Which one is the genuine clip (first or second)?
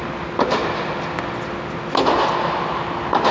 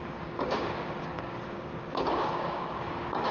first